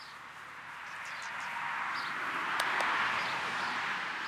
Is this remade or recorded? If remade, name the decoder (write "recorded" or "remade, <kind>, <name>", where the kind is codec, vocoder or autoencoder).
recorded